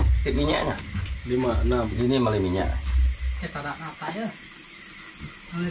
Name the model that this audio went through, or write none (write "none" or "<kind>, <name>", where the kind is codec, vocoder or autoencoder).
none